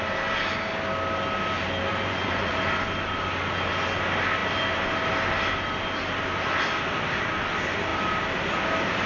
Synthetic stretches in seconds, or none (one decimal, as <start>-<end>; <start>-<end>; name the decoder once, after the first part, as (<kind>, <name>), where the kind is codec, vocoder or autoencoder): 1.9-2.6 (vocoder, Vocos)